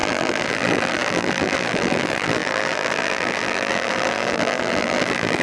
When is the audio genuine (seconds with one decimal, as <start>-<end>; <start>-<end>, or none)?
none